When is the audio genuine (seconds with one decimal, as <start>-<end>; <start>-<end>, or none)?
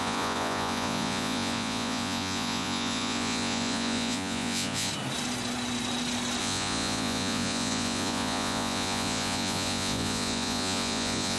4.9-6.4